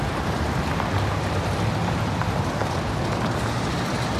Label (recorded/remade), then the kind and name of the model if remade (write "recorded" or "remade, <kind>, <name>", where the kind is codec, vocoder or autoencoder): recorded